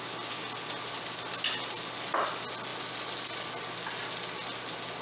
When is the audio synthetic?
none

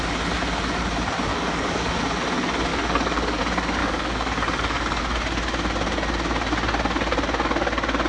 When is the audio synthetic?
1.3-1.9; 2.7-3.4; 3.8-5.0